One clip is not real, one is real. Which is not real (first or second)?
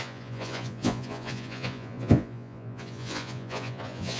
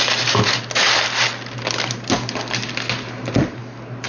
first